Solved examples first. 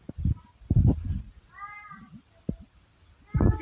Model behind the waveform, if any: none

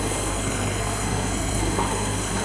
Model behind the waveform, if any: codec, SNAC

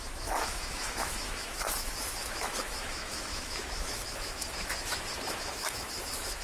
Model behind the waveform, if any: autoencoder, DAC-VAE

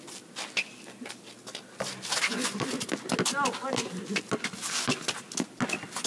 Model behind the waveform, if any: none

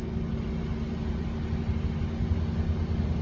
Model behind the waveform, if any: none